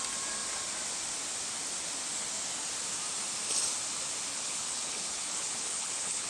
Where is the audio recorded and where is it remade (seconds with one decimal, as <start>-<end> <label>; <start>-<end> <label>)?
0.0-4.3 recorded; 4.3-6.3 remade